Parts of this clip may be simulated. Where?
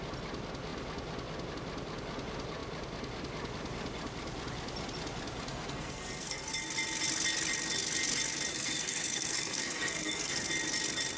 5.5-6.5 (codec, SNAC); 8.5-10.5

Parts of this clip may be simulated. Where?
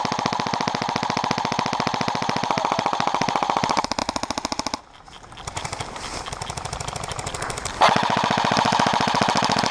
0.0-4.0 (vocoder, BigVGAN v2); 5.0-9.7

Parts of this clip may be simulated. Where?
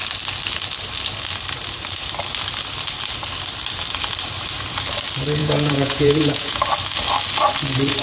5.4-6.6 (vocoder, Vocos)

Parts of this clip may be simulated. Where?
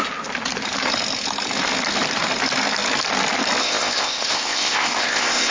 3.6-5.5 (codec, ZipCodec)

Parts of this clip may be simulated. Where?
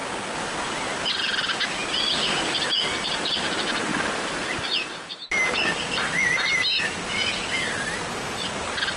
3.9-5.3 (vocoder, BigVGAN v2)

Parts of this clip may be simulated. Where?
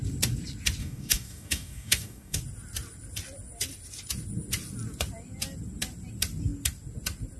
0.8-2.4 (codec, DAC)